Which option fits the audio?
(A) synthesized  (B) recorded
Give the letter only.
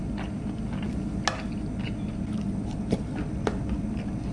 B